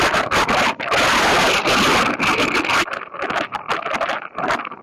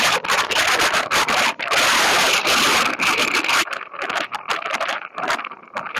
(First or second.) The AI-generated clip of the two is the second